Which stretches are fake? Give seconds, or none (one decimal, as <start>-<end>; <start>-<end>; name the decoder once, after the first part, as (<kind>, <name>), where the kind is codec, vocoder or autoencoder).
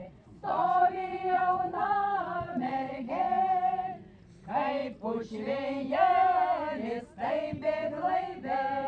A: 0.0-3.1 (vocoder, Vocos)